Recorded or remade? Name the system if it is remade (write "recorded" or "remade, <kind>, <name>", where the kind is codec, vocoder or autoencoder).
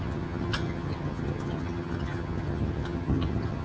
remade, vocoder, HiFi-GAN